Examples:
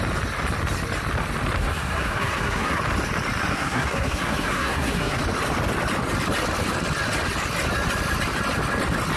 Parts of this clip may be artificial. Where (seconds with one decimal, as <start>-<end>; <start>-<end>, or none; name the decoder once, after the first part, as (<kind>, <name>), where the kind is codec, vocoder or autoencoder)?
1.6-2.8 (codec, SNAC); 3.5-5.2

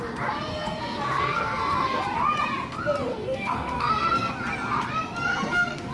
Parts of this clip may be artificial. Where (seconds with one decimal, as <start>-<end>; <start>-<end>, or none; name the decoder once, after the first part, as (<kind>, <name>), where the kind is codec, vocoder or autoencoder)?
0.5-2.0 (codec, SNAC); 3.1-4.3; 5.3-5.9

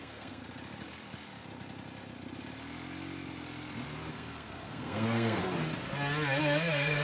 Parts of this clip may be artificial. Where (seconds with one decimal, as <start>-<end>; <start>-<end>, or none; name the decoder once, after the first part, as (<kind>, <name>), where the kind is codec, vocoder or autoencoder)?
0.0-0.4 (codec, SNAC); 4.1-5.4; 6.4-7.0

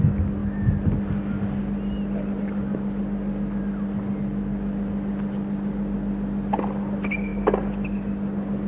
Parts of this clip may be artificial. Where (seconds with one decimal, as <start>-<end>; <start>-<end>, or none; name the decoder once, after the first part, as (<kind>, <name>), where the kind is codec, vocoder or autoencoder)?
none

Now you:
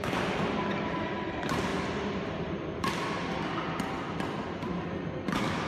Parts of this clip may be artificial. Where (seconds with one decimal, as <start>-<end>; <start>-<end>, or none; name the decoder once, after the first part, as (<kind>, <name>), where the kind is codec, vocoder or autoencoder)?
none